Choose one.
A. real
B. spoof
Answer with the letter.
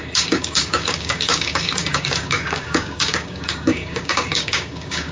B